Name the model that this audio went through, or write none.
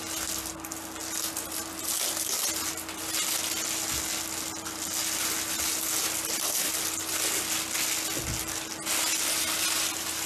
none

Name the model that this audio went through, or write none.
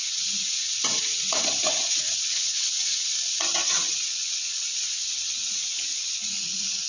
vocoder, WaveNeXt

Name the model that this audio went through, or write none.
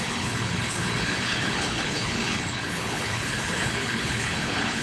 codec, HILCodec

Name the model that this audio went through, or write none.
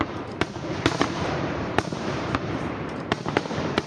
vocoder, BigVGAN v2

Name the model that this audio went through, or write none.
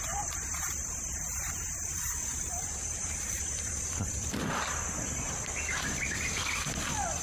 vocoder, BigVGAN v2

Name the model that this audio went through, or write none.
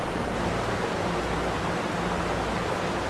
none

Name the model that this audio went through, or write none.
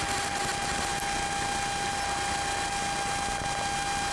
none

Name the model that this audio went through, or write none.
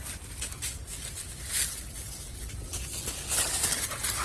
none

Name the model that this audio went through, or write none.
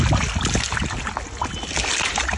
none